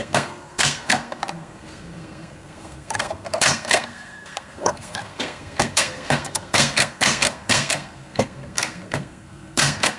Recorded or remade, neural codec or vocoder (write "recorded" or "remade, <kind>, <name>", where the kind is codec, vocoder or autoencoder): remade, codec, SNAC